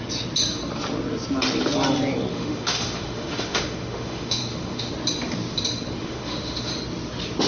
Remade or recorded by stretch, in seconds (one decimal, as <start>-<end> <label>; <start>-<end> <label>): 0.0-2.3 recorded; 2.3-4.9 remade; 4.9-6.0 recorded; 6.0-6.7 remade; 6.7-7.5 recorded

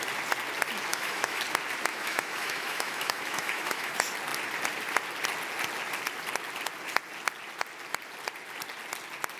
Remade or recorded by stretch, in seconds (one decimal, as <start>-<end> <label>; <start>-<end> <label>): 0.0-0.9 recorded; 0.9-1.4 remade; 1.4-1.9 recorded; 1.9-3.9 remade; 3.9-9.4 recorded

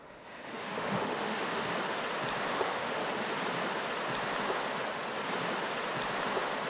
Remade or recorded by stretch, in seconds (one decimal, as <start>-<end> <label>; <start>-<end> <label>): 0.0-1.7 remade; 1.7-2.5 recorded; 2.5-3.0 remade; 3.0-6.7 recorded

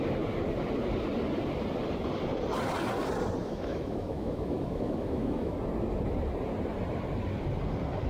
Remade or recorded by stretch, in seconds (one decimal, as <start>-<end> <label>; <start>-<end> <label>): 0.0-3.4 recorded; 3.4-5.5 remade; 5.5-8.1 recorded

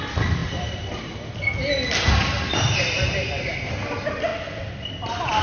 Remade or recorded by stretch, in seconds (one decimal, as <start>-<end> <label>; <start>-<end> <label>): 0.0-5.4 recorded

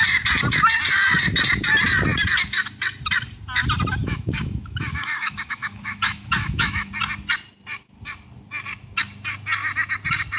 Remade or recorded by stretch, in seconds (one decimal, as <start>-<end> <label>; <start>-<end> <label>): 0.0-4.0 recorded; 4.0-6.9 remade; 6.9-10.4 recorded

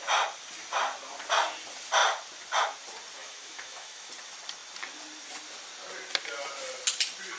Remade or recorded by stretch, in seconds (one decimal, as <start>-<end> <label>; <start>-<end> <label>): 0.0-3.2 recorded; 3.2-4.1 remade; 4.1-7.4 recorded

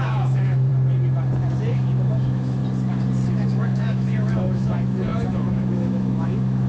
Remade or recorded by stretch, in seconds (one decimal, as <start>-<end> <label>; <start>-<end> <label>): 0.0-0.7 remade; 0.7-1.7 recorded; 1.7-2.6 remade; 2.6-3.3 recorded; 3.3-6.7 remade